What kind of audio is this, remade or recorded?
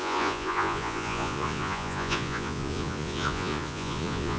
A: remade